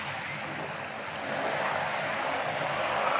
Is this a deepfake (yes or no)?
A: no